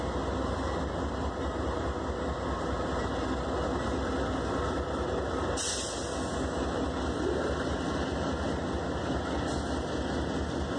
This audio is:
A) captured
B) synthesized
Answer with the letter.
A